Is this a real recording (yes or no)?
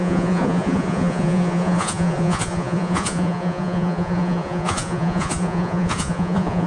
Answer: no